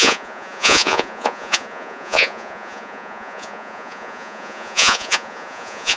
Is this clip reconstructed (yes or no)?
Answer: yes